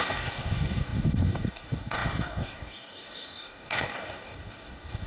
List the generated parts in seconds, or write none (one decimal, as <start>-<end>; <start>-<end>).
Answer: 0.0-5.1